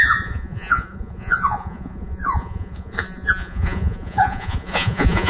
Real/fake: fake